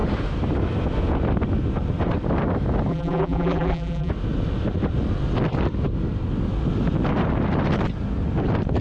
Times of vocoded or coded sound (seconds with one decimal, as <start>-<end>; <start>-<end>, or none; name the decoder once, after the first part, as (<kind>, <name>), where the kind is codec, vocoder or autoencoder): 2.9-4.1 (vocoder, BigVGAN v2)